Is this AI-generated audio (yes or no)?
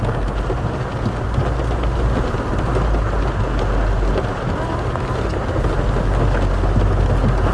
no